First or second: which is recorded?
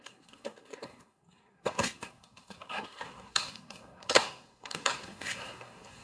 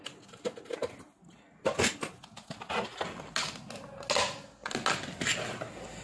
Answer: second